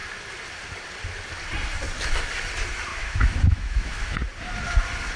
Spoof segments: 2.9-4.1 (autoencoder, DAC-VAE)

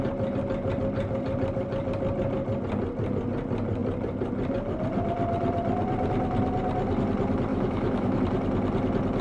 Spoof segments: 7.5-8.2 (autoencoder, DAC-VAE)

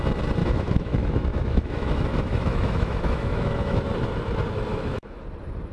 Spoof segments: 0.4-3.8 (autoencoder, DAC-VAE); 4.7-5.2